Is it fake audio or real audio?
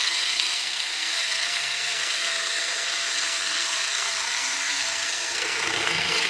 fake